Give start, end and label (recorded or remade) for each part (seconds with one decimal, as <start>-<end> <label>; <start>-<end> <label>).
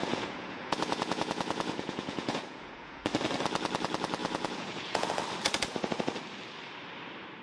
0.0-3.0 remade; 3.0-4.2 recorded; 4.2-5.1 remade; 5.1-7.4 recorded